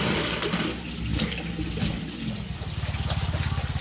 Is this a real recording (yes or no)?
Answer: yes